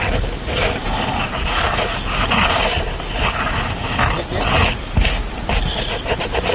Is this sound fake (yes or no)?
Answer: no